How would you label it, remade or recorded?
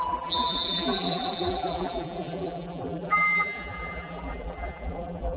remade